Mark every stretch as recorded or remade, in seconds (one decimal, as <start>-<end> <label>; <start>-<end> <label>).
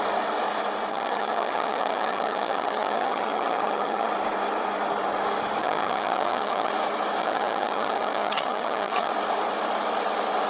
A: 0.0-0.9 recorded; 0.9-4.1 remade; 4.1-5.6 recorded; 5.6-6.7 remade; 6.7-7.2 recorded; 7.2-9.1 remade; 9.1-10.5 recorded